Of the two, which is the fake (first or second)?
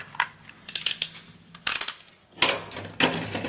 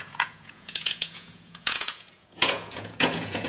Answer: second